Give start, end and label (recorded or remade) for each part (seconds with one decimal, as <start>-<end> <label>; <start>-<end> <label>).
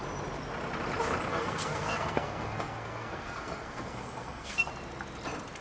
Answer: 0.0-1.3 recorded; 1.3-4.7 remade; 4.7-5.6 recorded